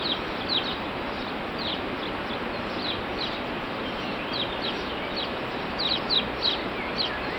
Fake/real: real